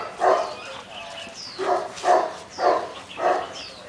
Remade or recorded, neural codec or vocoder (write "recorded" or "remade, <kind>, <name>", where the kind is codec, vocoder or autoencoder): recorded